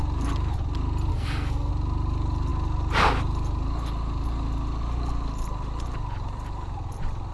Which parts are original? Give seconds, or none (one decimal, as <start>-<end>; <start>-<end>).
0.0-1.1; 1.7-7.3